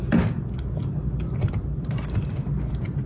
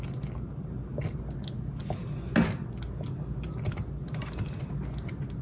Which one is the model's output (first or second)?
first